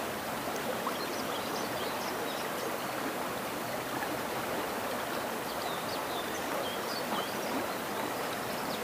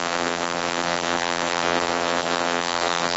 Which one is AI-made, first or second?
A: second